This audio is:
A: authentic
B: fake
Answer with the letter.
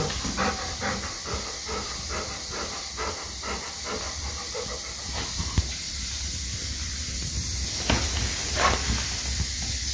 A